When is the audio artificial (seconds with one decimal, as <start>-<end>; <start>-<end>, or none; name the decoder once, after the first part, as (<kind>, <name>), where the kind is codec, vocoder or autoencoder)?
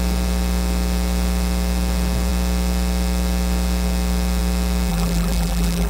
4.9-5.9 (vocoder, BigVGAN v2)